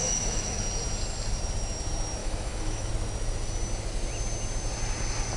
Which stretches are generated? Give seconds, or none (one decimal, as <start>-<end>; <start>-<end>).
0.0-0.6; 2.2-2.9